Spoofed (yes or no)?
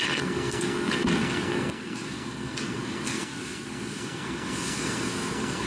yes